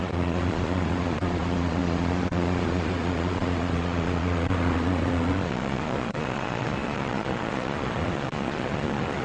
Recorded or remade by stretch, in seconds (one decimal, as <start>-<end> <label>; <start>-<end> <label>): 0.0-9.2 remade